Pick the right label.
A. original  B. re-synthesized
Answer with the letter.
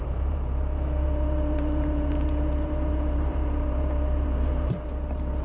B